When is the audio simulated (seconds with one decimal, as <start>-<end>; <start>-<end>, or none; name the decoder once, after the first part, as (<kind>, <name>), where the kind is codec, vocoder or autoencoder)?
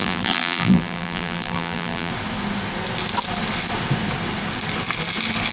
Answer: 0.0-2.1 (vocoder, BigVGAN v2)